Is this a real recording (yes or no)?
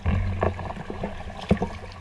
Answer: yes